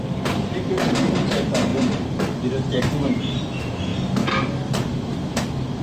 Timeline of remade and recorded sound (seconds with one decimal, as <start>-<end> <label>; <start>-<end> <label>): 0.0-5.8 recorded

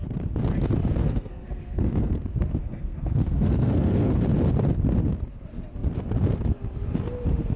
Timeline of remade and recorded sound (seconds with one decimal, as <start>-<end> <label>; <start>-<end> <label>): 0.0-1.0 recorded; 1.0-2.2 remade; 2.2-2.6 recorded; 2.6-4.2 remade; 4.2-7.6 recorded